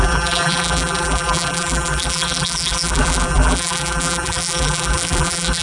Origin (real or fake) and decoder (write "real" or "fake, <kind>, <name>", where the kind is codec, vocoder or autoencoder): fake, vocoder, BigVGAN v2